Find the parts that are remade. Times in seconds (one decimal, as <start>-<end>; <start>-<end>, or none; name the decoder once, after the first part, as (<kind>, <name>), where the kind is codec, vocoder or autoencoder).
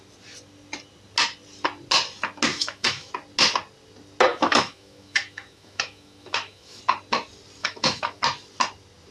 2.5-3.1 (autoencoder, DAC-VAE); 4.3-6.8; 7.6-8.2